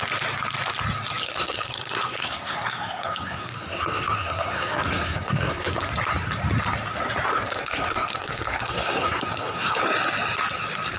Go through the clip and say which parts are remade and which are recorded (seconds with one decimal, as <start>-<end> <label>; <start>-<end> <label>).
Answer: 0.0-1.2 recorded; 1.2-5.9 remade; 5.9-7.3 recorded; 7.3-9.8 remade; 9.8-11.0 recorded